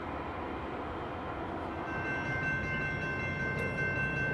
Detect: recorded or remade recorded